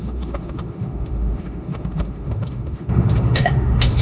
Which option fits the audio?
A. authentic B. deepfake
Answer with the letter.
B